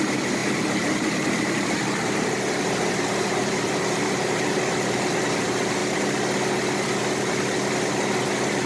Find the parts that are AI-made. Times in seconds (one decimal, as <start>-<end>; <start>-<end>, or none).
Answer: 0.0-5.8